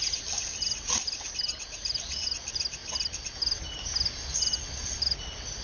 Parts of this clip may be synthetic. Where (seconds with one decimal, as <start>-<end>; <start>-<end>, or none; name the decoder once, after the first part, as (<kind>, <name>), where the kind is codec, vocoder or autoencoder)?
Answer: 1.4-2.0 (vocoder, BigVGAN v2)